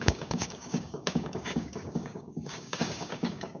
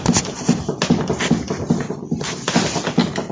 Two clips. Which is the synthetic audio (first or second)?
first